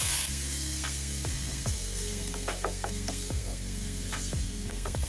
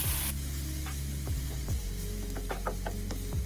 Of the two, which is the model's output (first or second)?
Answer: first